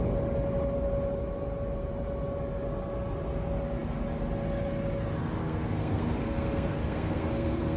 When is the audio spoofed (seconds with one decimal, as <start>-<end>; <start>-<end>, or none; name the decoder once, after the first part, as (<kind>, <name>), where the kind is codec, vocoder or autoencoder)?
5.4-7.8 (codec, SNAC)